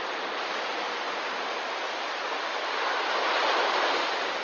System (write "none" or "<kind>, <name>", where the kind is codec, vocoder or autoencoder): none